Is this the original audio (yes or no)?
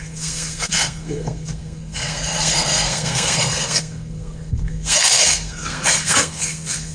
no